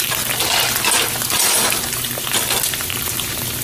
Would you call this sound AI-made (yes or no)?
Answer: no